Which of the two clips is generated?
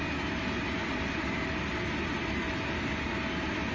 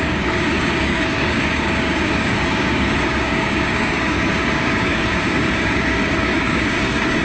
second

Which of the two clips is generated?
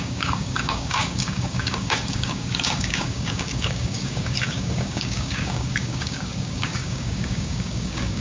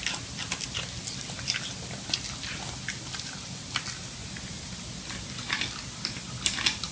first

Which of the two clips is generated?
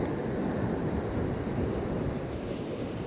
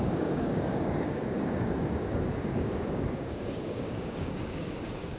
second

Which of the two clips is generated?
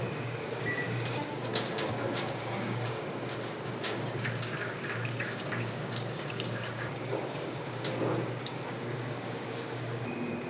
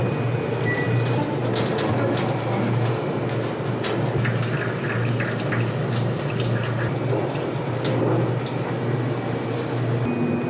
first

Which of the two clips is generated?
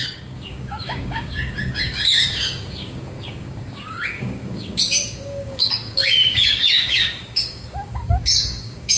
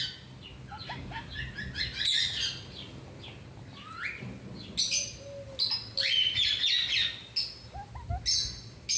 first